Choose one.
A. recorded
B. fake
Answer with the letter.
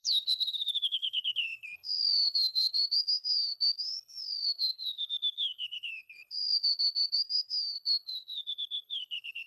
B